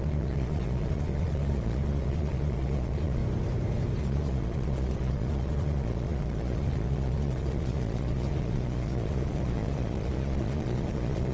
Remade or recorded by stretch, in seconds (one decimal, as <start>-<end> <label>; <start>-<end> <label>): 0.0-3.2 remade; 3.2-4.0 recorded; 4.0-11.3 remade